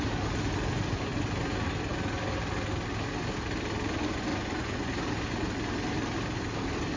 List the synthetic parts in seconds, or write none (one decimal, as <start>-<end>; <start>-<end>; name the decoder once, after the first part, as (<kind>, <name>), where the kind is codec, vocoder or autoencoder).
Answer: 4.3-4.9 (vocoder, Vocos)